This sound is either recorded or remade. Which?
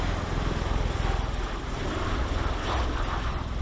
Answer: remade